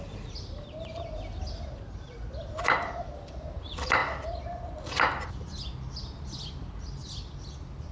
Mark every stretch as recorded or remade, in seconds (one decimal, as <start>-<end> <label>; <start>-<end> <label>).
0.0-7.9 recorded